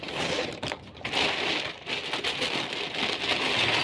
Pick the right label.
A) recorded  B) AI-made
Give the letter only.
A